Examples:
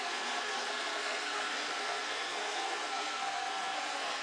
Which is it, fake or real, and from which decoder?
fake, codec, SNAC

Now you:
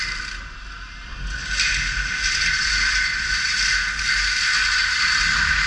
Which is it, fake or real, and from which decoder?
real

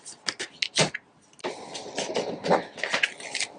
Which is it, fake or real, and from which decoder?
real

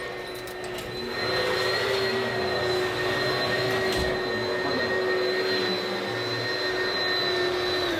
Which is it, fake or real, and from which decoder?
real